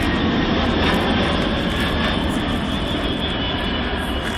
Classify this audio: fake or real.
real